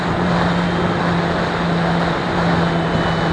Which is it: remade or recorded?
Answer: recorded